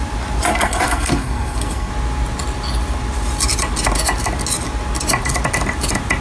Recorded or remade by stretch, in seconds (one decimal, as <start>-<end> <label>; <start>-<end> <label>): 0.0-0.5 recorded; 0.5-1.9 remade; 1.9-6.2 recorded